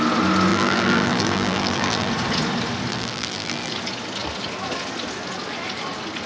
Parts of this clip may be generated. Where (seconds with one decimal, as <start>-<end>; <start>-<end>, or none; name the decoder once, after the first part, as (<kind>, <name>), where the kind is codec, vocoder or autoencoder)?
0.5-2.1 (vocoder, BigVGAN v2); 2.9-3.7